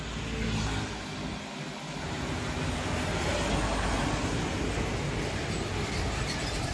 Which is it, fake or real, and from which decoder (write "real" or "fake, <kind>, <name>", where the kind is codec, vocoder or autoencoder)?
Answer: real